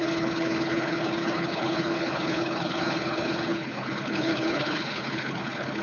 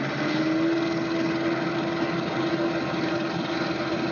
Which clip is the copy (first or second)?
first